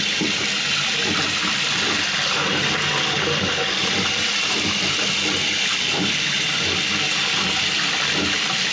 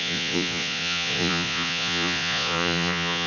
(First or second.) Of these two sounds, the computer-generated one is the second